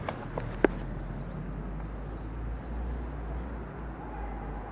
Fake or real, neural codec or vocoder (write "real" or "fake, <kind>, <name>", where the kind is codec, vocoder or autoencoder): real